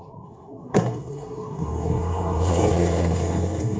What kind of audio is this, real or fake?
fake